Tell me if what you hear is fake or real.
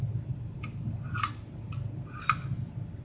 real